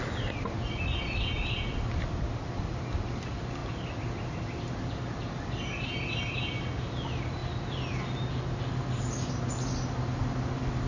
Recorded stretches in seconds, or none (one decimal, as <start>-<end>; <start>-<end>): 0.0-10.9